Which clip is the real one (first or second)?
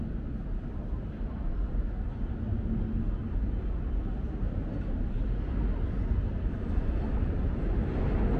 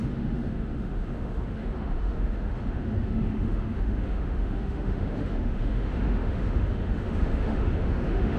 first